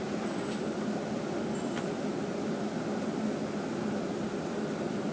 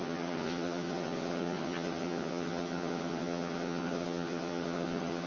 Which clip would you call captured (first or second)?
first